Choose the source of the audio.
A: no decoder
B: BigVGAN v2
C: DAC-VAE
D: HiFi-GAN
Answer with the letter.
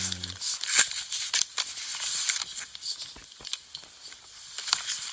A